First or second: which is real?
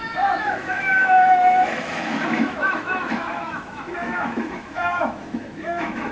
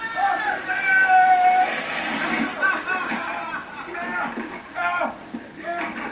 second